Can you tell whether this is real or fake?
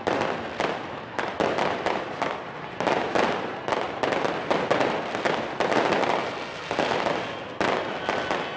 real